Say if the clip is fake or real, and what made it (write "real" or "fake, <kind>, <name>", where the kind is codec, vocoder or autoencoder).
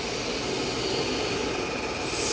real